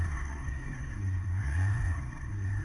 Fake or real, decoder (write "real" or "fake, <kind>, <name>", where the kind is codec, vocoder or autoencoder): fake, codec, SNAC